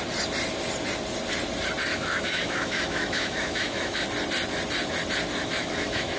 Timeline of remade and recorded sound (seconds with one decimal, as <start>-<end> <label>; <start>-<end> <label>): 0.0-1.9 recorded; 1.9-4.0 remade; 4.0-5.4 recorded; 5.4-6.2 remade

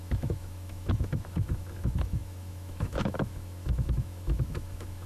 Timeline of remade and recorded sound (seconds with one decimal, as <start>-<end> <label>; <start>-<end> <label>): 0.0-5.1 remade

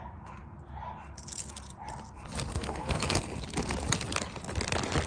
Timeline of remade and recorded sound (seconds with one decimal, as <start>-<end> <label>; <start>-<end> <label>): 0.0-2.5 recorded; 2.5-3.4 remade; 3.4-5.1 recorded

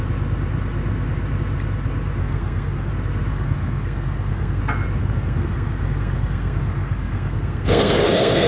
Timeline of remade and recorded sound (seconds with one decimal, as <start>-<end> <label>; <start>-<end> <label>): 0.0-2.2 recorded; 2.2-2.9 remade; 2.9-3.3 recorded; 3.3-4.6 remade; 4.6-5.0 recorded; 5.0-8.5 remade

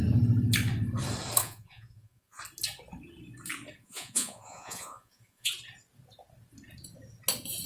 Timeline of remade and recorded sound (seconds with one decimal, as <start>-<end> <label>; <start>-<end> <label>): 0.0-1.4 recorded; 1.4-2.4 remade; 2.4-3.8 recorded; 3.8-5.5 remade; 5.5-7.7 recorded

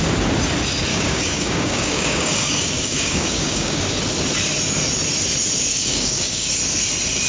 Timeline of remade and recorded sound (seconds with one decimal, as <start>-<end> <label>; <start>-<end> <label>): 0.0-0.9 recorded; 0.9-3.8 remade; 3.8-5.7 recorded; 5.7-6.5 remade; 6.5-7.3 recorded